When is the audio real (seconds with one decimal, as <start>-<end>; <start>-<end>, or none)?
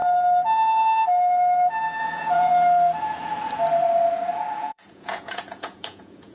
0.0-2.0; 2.5-4.6